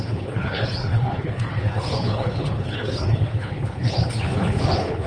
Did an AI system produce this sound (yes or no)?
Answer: yes